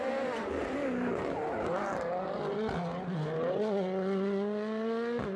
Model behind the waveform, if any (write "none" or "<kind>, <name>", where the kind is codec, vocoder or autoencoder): none